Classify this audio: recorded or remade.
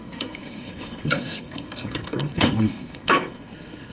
remade